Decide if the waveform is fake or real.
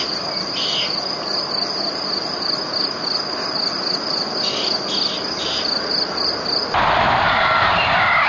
real